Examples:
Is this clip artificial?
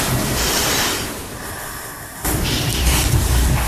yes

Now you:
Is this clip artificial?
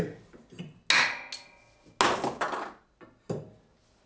no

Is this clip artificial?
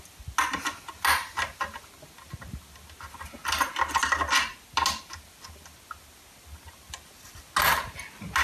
no